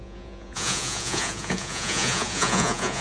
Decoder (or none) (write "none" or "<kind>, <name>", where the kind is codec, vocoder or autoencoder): vocoder, Vocos